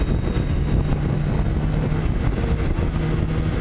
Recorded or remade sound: recorded